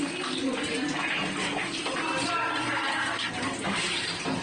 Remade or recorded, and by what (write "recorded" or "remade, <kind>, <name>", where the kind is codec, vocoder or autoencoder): recorded